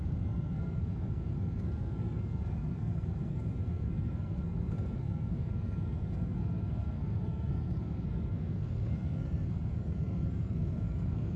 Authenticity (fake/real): fake